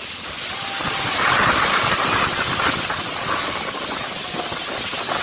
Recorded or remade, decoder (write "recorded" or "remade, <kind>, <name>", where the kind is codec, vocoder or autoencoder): recorded